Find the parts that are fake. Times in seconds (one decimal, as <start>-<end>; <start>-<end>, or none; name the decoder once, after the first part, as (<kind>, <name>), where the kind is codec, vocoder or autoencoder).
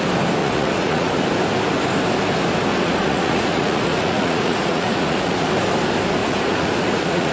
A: 0.4-1.1 (vocoder, Vocos); 2.7-5.5; 6.2-7.3